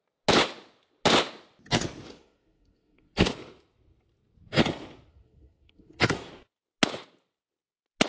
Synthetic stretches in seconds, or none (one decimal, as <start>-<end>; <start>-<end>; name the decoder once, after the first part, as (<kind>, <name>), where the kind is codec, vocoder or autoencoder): 2.1-3.3 (codec, SNAC); 5.1-6.3